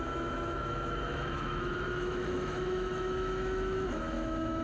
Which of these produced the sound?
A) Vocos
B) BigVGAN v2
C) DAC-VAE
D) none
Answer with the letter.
C